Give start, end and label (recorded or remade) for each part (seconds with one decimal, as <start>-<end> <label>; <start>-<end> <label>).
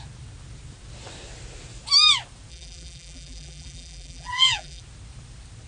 0.0-2.5 recorded; 2.5-4.8 remade; 4.8-5.7 recorded